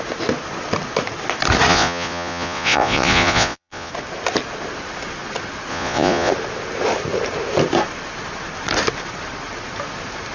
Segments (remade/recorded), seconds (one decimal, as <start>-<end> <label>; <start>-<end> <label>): 0.0-1.7 recorded; 1.7-3.9 remade; 3.9-5.7 recorded; 5.7-6.3 remade; 6.3-10.3 recorded